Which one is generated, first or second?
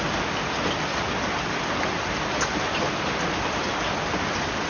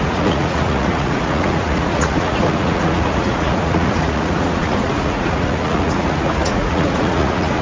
second